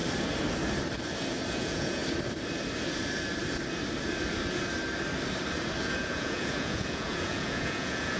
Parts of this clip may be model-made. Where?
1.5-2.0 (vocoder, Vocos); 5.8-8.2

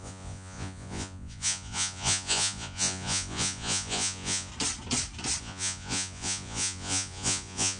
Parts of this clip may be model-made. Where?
0.0-4.5 (vocoder, Vocos); 5.4-7.8

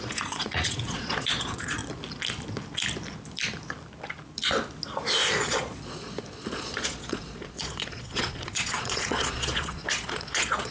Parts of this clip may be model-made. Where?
0.0-1.8 (vocoder, Vocos); 5.3-10.7

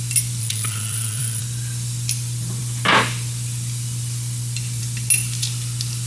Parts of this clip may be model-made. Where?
0.4-1.4 (vocoder, Vocos)

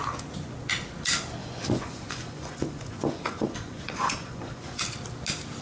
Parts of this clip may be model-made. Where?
1.4-4.8 (vocoder, Vocos)